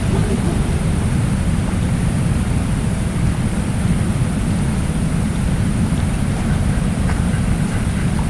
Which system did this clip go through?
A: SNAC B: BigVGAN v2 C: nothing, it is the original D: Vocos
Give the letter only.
B